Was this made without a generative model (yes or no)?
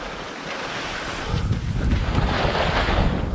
yes